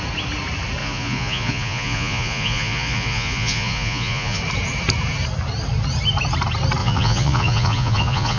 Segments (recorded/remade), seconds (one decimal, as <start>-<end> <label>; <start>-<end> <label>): 0.0-0.8 recorded; 0.8-4.4 remade; 4.4-6.8 recorded; 6.8-8.4 remade